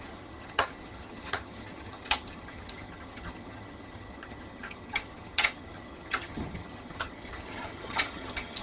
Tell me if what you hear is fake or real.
fake